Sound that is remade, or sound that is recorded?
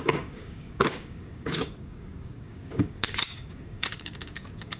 remade